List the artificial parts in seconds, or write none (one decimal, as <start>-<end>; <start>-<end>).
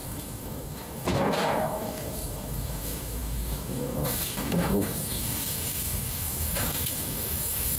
0.0-7.8